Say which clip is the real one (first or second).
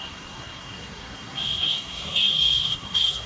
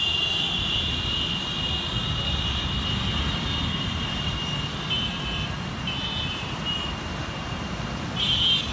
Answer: second